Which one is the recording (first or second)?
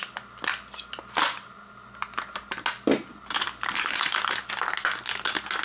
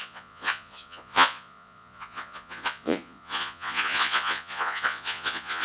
first